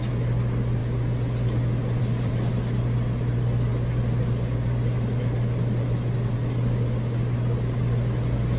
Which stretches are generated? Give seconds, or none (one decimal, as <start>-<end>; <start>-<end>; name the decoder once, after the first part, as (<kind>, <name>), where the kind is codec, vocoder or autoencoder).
none